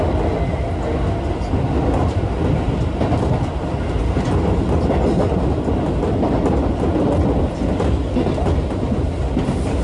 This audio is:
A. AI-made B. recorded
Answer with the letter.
B